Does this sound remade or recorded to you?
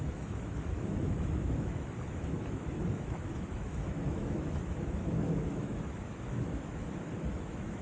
remade